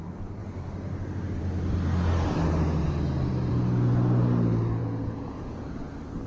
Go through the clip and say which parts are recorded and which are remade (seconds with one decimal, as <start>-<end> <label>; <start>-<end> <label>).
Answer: 0.0-4.8 recorded; 4.8-5.8 remade; 5.8-6.3 recorded